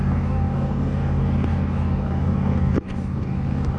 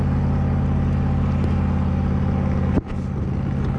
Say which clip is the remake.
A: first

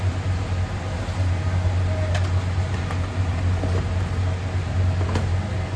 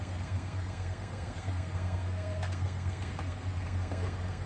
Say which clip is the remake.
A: second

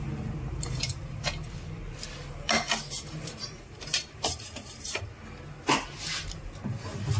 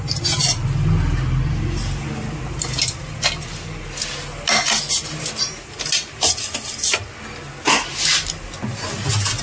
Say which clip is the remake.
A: first